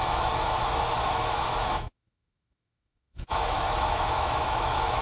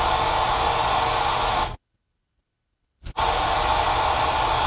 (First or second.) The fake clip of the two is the first